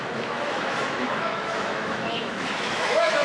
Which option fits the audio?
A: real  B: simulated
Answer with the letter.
B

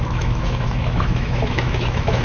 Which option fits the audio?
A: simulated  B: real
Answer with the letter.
A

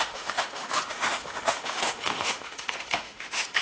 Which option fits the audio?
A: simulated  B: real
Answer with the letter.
A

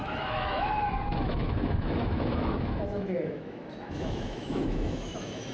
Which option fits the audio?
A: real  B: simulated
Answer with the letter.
B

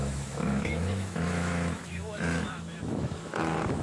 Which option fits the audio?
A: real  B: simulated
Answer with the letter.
B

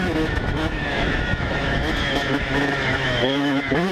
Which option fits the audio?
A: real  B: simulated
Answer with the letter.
B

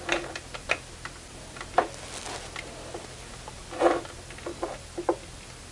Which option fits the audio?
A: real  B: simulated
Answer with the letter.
A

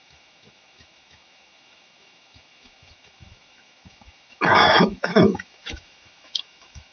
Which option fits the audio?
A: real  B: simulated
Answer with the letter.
B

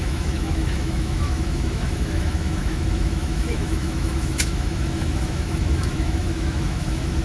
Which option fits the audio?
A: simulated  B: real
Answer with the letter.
A